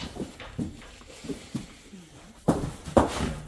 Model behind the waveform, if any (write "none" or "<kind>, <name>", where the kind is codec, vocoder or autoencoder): none